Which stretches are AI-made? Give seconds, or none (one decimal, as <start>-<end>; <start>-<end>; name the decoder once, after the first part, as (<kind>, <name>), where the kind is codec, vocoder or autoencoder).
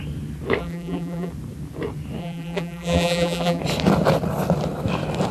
0.6-1.3 (vocoder, BigVGAN v2); 2.2-3.6